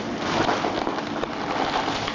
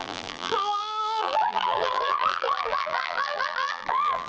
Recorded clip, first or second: first